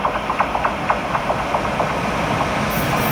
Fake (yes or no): no